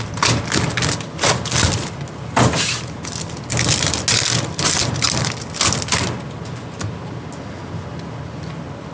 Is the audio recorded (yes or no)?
yes